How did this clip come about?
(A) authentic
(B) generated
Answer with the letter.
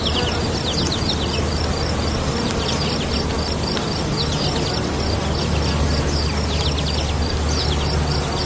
A